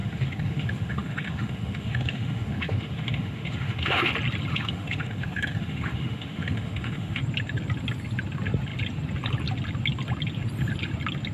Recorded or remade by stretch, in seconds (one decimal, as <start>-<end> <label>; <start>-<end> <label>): 0.0-4.1 remade; 4.1-4.5 recorded; 4.5-7.2 remade; 7.2-11.3 recorded